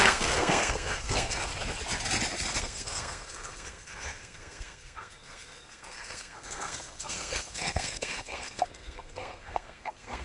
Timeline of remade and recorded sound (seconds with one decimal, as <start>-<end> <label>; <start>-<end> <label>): 0.0-1.5 remade; 1.5-2.6 recorded; 2.6-10.2 remade